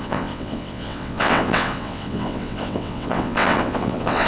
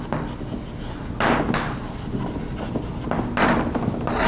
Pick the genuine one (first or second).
second